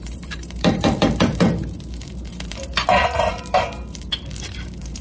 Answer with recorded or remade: remade